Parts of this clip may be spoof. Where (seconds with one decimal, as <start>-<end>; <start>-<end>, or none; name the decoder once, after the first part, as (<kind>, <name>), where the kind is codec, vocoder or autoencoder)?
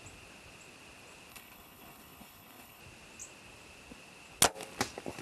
1.3-2.8 (codec, HILCodec)